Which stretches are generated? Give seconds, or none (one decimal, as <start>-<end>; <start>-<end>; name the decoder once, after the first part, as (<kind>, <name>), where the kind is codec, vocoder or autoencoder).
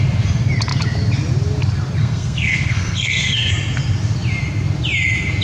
2.0-3.5 (codec, SNAC)